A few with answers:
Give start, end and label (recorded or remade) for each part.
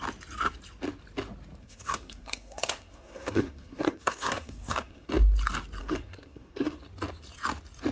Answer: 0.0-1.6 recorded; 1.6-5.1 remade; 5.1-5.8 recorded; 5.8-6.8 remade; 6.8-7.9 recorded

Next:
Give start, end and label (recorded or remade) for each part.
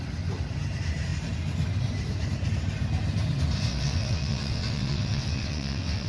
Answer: 0.0-3.7 recorded; 3.7-6.1 remade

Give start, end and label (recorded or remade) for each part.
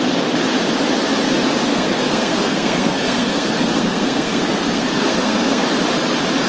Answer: 0.0-1.7 recorded; 1.7-5.6 remade; 5.6-6.5 recorded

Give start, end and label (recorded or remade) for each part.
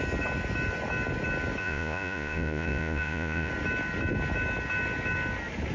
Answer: 0.0-1.6 recorded; 1.6-3.5 remade; 3.5-5.7 recorded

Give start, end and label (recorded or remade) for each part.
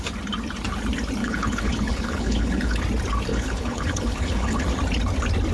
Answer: 0.0-1.2 recorded; 1.2-2.8 remade; 2.8-3.3 recorded; 3.3-4.6 remade; 4.6-5.5 recorded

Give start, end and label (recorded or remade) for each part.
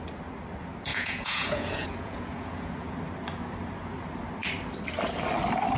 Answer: 0.0-0.9 recorded; 0.9-2.7 remade; 2.7-5.8 recorded